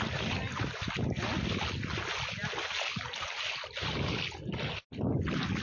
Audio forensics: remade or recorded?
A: recorded